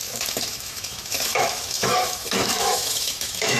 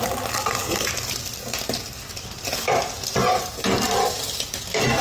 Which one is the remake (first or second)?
first